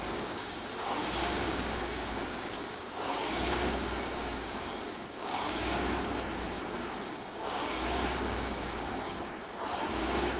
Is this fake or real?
fake